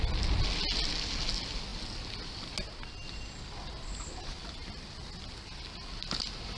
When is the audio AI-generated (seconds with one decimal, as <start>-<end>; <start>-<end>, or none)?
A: none